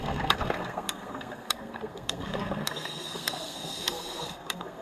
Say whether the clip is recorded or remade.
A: remade